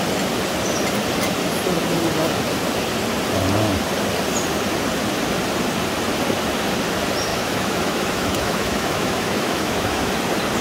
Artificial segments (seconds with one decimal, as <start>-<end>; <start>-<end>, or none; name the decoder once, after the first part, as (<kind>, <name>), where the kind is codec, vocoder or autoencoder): 7.3-10.1 (autoencoder, DAC-VAE)